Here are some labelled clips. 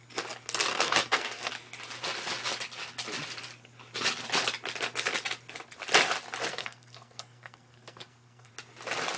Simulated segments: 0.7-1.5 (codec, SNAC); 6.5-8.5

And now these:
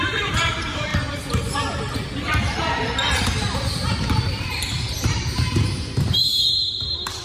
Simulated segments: 0.0-0.9 (vocoder, BigVGAN v2); 3.2-7.2